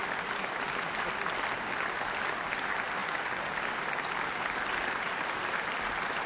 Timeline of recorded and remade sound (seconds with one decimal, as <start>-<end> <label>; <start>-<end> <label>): 0.0-6.3 recorded